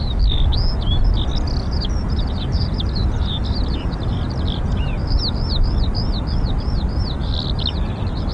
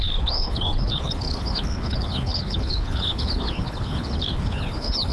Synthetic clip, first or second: second